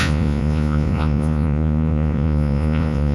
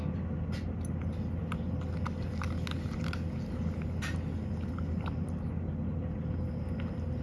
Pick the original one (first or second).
second